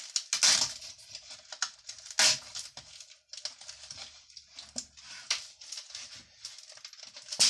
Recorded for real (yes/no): yes